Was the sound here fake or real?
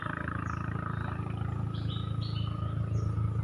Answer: real